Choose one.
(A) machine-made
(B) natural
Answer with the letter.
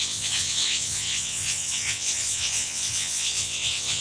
A